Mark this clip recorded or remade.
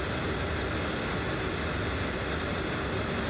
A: recorded